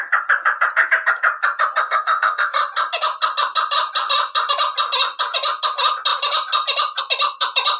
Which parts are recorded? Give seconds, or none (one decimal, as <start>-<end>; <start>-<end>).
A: 0.0-1.8; 2.5-7.8

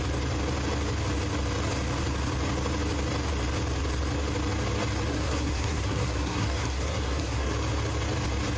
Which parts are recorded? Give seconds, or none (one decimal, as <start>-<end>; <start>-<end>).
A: 0.0-5.1; 7.5-8.6

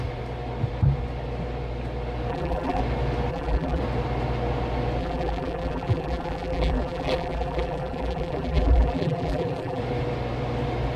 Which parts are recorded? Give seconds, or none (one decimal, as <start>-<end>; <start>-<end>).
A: 0.0-2.3; 2.8-3.3; 3.8-5.0; 9.8-11.0

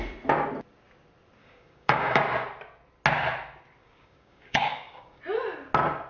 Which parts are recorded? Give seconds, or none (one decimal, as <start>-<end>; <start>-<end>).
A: 0.0-1.4; 2.2-3.8; 5.2-6.1

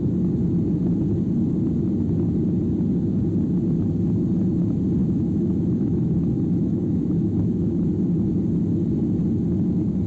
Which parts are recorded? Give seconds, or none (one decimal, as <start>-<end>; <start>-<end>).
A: 0.0-5.0; 6.1-6.6; 7.9-10.1

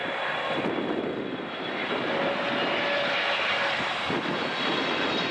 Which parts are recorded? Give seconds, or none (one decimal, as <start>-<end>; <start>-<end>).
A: 0.0-5.3

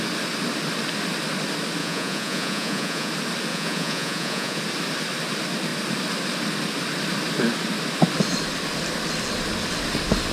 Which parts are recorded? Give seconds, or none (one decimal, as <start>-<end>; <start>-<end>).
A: 0.0-1.8; 3.1-3.5; 4.6-10.3

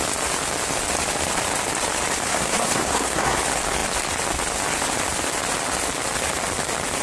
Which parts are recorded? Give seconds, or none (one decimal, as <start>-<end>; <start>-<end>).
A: 0.0-2.3; 3.4-7.0